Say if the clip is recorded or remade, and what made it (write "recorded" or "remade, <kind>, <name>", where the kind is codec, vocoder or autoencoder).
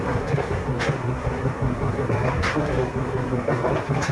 remade, codec, SNAC